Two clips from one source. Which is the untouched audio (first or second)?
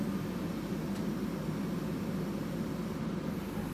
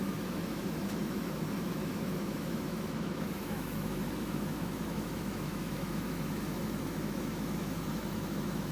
first